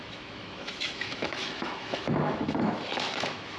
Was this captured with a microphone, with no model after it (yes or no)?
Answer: no